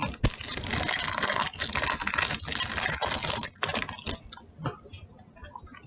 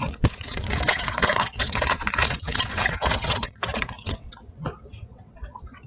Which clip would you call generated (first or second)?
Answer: second